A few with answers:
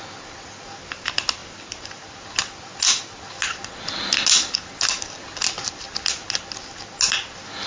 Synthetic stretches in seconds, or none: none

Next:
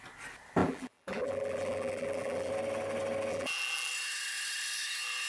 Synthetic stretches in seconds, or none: 0.6-2.5; 3.3-3.9

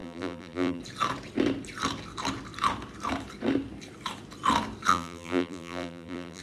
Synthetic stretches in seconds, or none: 0.0-0.8; 4.9-6.4

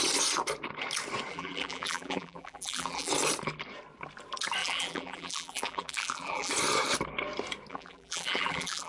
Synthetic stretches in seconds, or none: 1.3-3.1; 4.6-6.5; 7.7-8.9

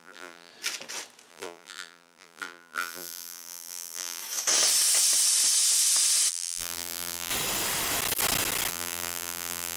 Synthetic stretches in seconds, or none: 0.0-0.5; 1.3-4.2; 6.3-7.3; 8.7-9.8